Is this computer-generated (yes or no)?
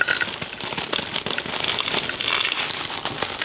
no